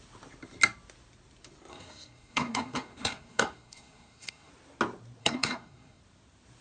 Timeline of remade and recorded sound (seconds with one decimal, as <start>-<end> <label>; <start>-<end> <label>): 0.0-1.7 recorded; 1.7-4.5 remade; 4.5-5.2 recorded; 5.2-6.0 remade; 6.0-6.6 recorded